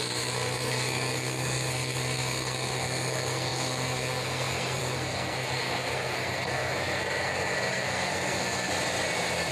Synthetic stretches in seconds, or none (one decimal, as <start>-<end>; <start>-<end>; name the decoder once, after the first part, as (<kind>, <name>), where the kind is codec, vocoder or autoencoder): 0.0-8.7 (codec, SNAC)